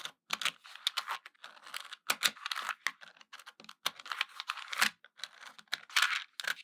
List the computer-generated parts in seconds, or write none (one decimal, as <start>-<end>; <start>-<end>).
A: none